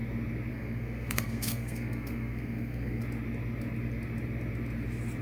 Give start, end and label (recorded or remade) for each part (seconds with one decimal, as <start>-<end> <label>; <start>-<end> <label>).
0.0-0.5 recorded; 0.5-3.0 remade; 3.0-5.2 recorded